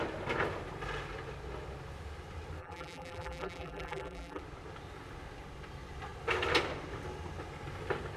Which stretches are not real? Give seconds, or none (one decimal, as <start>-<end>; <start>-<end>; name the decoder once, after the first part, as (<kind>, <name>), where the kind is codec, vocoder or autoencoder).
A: 2.6-4.4 (vocoder, BigVGAN v2)

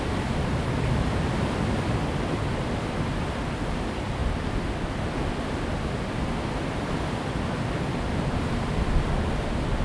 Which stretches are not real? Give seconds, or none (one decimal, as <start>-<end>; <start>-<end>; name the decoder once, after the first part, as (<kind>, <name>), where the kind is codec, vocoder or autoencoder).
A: none

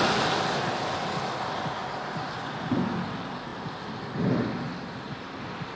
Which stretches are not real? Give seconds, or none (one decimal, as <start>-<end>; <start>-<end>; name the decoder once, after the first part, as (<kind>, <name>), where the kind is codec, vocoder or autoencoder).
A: 1.8-2.7 (vocoder, BigVGAN v2)

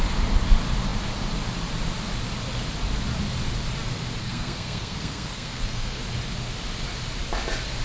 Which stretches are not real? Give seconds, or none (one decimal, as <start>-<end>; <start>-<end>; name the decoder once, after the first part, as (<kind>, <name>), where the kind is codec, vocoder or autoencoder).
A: 4.2-6.0 (codec, SNAC)

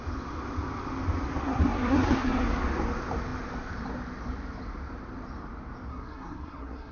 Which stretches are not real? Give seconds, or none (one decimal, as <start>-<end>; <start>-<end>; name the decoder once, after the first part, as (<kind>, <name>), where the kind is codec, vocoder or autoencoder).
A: 1.4-2.6 (codec, SNAC); 5.9-6.9

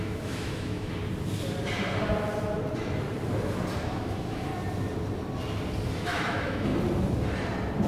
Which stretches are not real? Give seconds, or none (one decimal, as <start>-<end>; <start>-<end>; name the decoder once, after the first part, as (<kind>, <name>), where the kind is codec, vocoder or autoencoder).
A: 0.0-1.0 (autoencoder, DAC-VAE); 3.9-4.5; 5.9-6.7

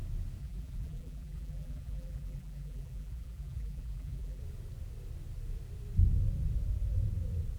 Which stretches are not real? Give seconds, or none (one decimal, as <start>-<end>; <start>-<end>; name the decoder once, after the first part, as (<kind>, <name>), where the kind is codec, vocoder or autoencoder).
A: 0.4-4.4 (vocoder, BigVGAN v2)